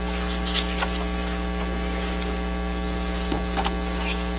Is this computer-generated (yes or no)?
no